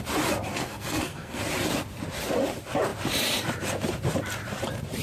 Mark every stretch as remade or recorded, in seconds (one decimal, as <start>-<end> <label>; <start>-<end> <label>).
0.0-0.5 recorded; 0.5-1.4 remade; 1.4-5.0 recorded